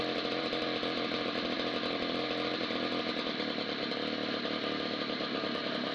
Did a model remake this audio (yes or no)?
yes